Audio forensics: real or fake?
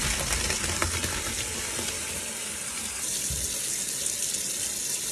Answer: real